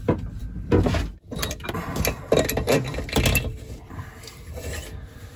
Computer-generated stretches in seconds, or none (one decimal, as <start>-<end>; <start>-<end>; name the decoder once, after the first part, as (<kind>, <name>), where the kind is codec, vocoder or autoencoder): none